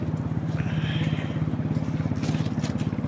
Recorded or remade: recorded